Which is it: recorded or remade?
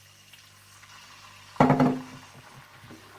recorded